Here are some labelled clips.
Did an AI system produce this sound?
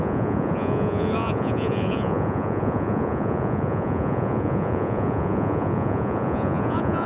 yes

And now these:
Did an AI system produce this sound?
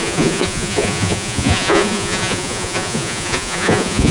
yes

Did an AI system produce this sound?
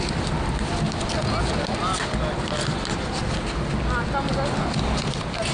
no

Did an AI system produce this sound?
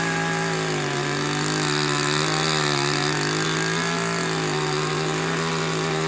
no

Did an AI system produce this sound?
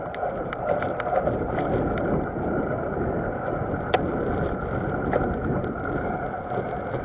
no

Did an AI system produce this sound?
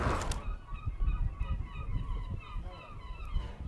no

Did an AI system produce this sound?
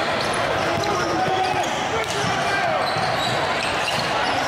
no